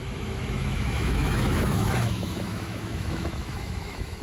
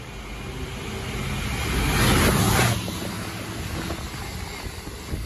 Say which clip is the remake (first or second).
first